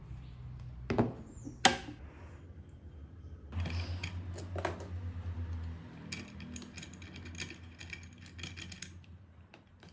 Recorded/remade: recorded